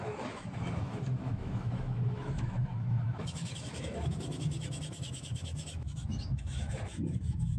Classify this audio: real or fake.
fake